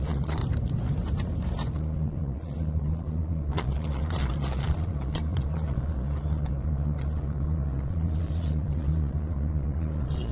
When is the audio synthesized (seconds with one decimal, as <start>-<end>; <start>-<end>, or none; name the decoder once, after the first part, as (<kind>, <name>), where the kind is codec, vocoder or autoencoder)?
0.0-0.4 (vocoder, Vocos); 1.7-10.3